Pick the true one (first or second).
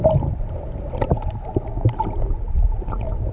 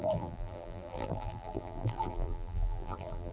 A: first